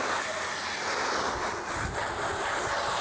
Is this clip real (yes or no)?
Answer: yes